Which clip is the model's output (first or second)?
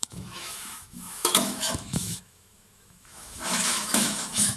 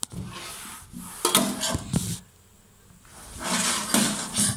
first